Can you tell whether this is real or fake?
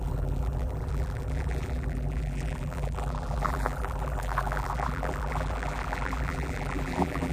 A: fake